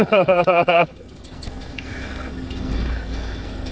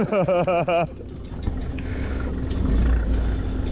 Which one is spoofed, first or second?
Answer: first